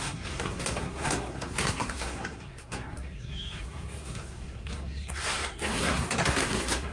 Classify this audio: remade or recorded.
remade